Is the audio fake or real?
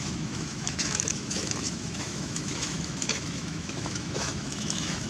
fake